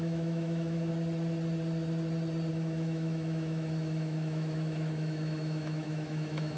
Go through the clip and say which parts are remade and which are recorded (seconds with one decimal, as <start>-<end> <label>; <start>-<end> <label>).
0.0-0.9 remade; 0.9-2.5 recorded; 2.5-6.6 remade